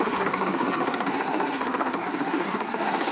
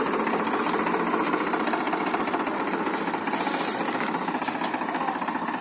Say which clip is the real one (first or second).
second